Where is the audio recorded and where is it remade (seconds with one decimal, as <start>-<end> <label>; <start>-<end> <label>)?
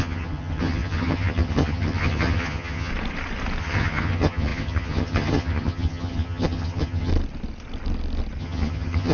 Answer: 0.0-2.9 remade; 2.9-3.6 recorded; 3.6-7.1 remade; 7.1-8.4 recorded; 8.4-9.1 remade